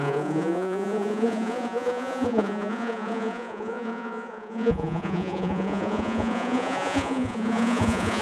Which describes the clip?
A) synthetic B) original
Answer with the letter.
A